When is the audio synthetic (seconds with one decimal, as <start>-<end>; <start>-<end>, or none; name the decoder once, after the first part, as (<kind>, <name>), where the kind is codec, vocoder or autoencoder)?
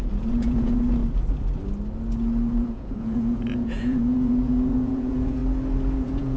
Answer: 0.0-1.0 (vocoder, Vocos); 2.5-5.4; 6.0-6.4